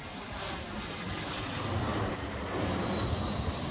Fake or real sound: real